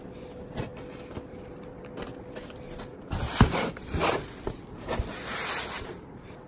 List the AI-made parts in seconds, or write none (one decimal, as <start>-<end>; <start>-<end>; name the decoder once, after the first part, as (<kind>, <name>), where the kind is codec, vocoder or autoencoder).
none